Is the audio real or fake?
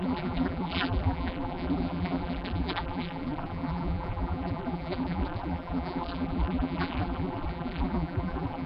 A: fake